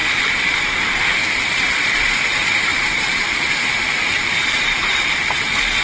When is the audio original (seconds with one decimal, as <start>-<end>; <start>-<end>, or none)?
0.0-2.7; 5.0-5.8

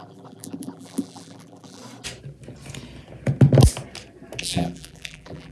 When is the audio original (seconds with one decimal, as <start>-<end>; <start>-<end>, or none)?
1.8-4.4

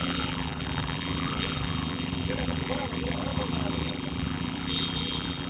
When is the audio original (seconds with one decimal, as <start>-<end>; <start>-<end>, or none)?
none

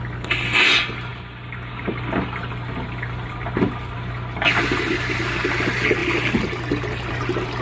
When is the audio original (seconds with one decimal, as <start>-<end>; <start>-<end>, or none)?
0.0-1.1; 2.5-6.0; 7.1-7.6

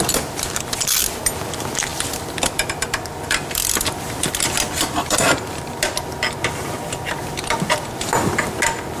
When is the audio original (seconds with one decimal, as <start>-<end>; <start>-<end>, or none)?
0.0-1.9; 5.2-9.0